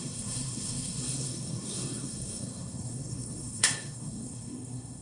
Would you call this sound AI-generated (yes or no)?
yes